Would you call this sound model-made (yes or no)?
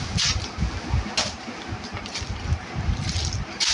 no